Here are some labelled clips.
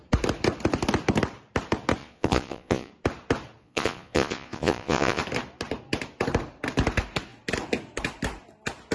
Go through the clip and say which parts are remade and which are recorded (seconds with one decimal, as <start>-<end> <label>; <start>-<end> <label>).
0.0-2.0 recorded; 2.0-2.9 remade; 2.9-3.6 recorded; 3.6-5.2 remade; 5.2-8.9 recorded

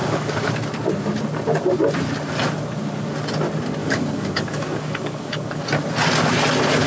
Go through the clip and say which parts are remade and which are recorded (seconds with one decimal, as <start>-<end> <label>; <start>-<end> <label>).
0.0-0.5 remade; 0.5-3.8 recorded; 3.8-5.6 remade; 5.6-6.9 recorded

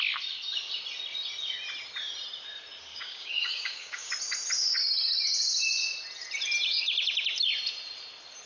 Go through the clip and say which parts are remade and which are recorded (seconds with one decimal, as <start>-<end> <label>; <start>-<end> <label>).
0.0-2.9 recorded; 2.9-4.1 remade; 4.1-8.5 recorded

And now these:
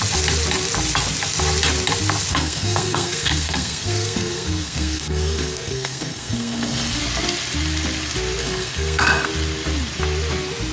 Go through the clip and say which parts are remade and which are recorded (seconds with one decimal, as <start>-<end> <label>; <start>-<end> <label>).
0.0-2.3 recorded; 2.3-7.0 remade; 7.0-8.4 recorded; 8.4-9.3 remade; 9.3-10.7 recorded

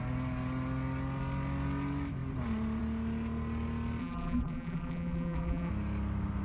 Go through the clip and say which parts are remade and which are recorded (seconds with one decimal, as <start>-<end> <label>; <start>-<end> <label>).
0.0-4.0 recorded; 4.0-5.7 remade; 5.7-6.4 recorded